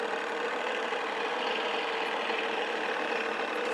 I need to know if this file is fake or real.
real